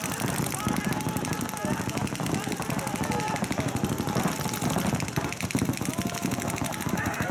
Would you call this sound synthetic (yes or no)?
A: no